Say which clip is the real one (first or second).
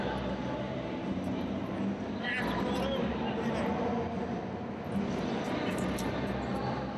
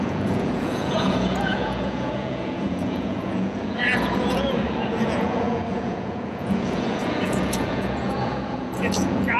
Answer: first